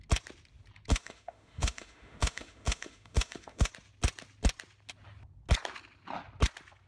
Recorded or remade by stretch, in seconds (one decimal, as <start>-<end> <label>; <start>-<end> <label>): 0.0-0.9 recorded; 0.9-3.7 remade; 3.7-6.9 recorded